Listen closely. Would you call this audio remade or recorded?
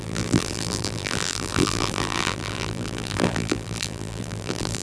remade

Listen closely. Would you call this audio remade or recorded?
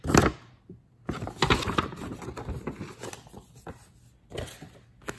recorded